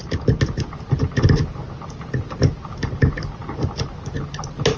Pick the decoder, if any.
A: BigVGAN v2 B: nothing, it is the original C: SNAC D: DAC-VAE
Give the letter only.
B